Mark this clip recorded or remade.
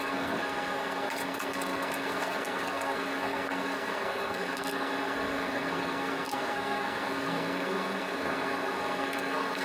remade